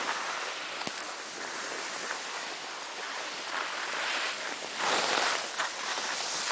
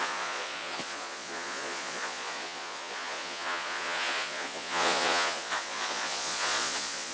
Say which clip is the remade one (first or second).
second